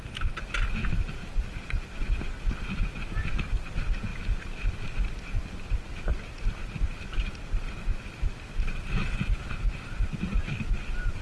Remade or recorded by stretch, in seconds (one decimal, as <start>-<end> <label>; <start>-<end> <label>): 0.0-1.2 recorded; 1.2-2.5 remade; 2.5-11.2 recorded